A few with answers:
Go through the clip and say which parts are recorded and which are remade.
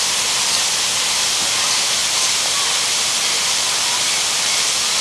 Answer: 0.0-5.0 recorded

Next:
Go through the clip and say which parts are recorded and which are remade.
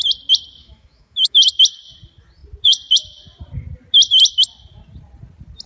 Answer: 0.0-0.6 recorded; 0.6-1.5 remade; 1.5-5.7 recorded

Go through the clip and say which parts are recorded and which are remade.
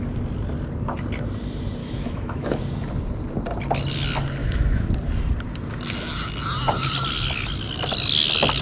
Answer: 0.0-1.8 recorded; 1.8-2.6 remade; 2.6-4.4 recorded; 4.4-4.9 remade; 4.9-8.6 recorded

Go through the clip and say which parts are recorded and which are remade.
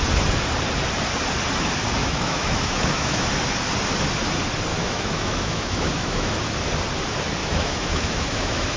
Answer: 0.0-2.0 recorded; 2.0-3.3 remade; 3.3-4.7 recorded; 4.7-6.3 remade; 6.3-7.4 recorded; 7.4-8.8 remade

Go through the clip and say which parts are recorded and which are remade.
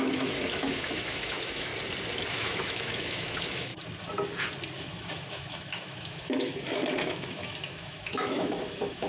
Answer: 0.0-1.7 remade; 1.7-2.3 recorded; 2.3-3.7 remade; 3.7-4.8 recorded; 4.8-9.1 remade